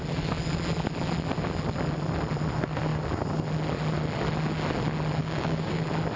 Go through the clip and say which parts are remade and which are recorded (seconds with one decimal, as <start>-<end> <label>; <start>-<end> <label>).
0.0-5.2 recorded; 5.2-5.8 remade; 5.8-6.2 recorded